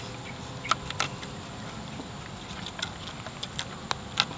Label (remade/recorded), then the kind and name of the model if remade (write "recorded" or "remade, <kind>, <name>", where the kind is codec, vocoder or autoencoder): recorded